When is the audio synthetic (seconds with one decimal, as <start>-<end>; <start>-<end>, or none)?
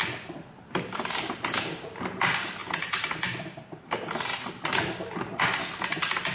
0.0-2.6; 4.8-5.3